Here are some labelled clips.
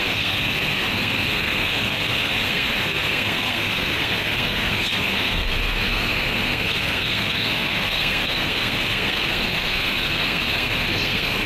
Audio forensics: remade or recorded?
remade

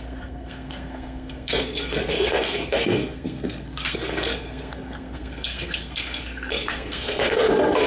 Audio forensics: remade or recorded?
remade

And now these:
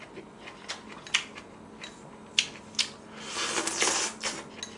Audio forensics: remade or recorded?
recorded